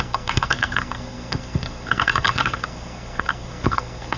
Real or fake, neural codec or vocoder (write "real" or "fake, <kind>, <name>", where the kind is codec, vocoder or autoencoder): fake, codec, SNAC